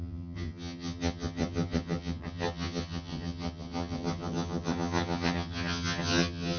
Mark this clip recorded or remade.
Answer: remade